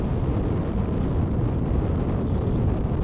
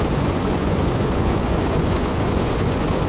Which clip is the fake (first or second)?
second